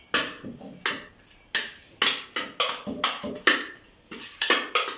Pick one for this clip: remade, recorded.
recorded